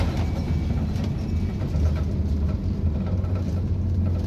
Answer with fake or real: real